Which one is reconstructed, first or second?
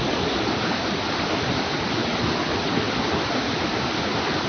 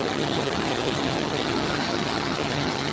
second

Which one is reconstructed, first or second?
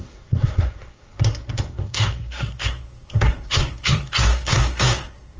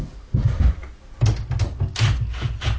first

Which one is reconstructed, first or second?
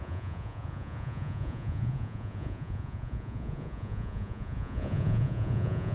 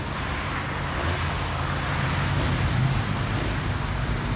first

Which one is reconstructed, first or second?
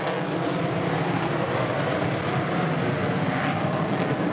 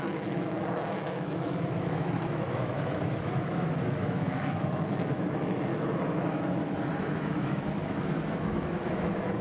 second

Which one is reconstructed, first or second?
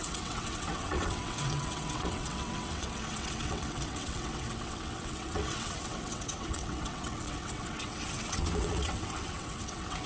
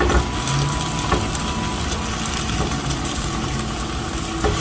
first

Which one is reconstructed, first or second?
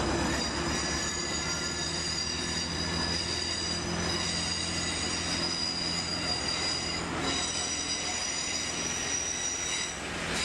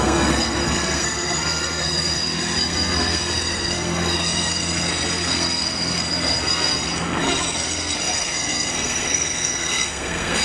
second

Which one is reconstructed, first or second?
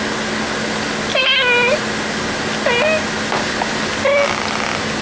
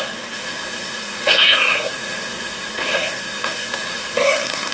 second